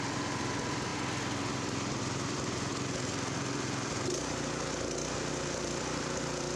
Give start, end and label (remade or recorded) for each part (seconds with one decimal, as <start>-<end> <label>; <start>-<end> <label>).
0.0-0.9 remade; 0.9-2.0 recorded; 2.0-2.7 remade; 2.7-5.3 recorded; 5.3-6.6 remade